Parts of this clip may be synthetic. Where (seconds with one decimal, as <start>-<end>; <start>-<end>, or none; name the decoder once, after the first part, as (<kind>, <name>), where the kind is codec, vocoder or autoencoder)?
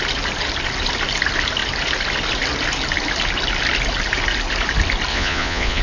5.1-5.8 (vocoder, Vocos)